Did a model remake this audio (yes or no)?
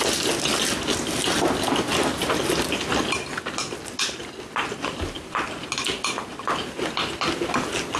no